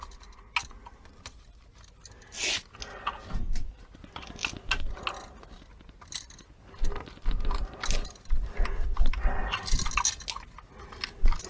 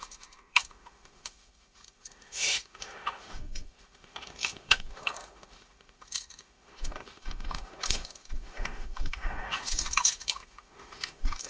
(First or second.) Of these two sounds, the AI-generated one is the second